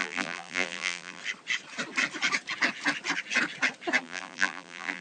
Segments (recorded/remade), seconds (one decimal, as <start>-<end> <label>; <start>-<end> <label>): 0.0-1.2 remade; 1.2-4.0 recorded; 4.0-5.0 remade